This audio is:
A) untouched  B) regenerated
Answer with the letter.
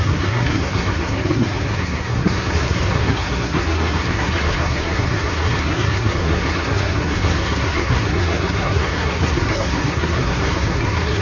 B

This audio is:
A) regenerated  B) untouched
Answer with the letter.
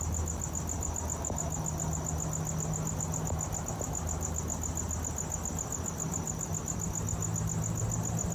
B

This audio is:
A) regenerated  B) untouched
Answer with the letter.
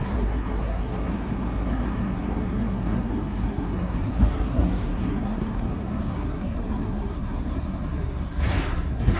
A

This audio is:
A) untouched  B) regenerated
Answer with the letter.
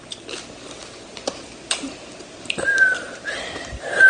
A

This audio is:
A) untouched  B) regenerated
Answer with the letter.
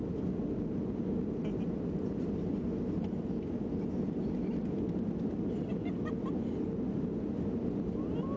A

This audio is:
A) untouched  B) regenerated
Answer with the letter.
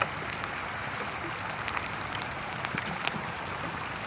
A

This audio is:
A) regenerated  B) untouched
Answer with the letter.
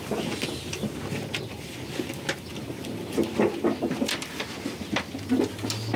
B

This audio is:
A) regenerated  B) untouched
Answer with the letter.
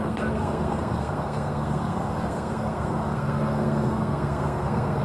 A